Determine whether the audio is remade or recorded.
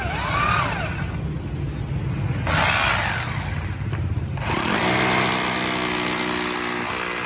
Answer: recorded